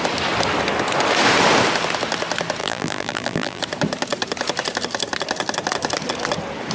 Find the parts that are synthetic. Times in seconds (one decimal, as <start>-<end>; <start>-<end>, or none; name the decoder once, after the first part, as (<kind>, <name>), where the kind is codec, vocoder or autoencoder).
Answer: 2.6-3.6 (vocoder, BigVGAN v2)